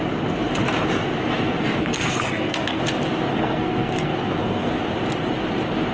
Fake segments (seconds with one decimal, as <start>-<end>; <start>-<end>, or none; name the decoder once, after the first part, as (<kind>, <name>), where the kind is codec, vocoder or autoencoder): 1.8-2.8 (codec, SNAC); 3.3-4.7